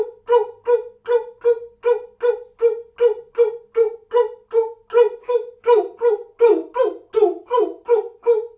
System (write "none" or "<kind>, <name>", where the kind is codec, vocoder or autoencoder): none